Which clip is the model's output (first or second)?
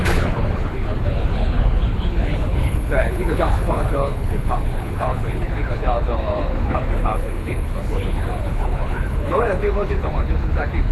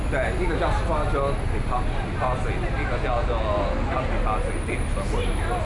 first